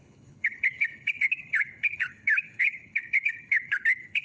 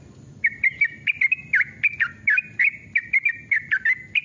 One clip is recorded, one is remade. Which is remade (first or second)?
first